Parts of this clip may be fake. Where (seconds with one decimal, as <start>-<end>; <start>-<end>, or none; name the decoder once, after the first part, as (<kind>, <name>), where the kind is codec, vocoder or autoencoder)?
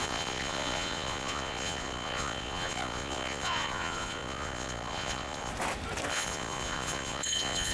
0.0-5.5 (vocoder, Vocos); 6.1-7.7